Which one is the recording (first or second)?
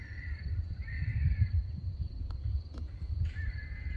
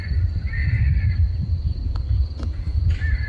second